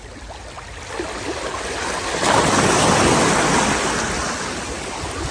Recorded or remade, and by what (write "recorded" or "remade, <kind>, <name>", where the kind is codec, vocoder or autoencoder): recorded